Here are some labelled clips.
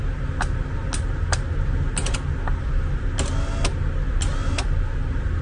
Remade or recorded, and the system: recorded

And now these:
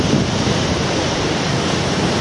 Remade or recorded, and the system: remade, vocoder, BigVGAN v2